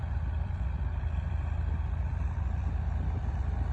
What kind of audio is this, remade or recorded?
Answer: remade